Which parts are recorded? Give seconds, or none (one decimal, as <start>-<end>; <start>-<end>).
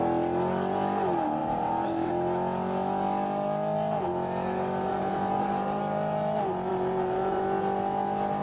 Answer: 0.0-1.4; 2.1-4.9; 5.8-6.7; 7.4-8.4